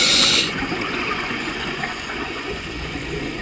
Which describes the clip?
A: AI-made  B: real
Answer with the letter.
A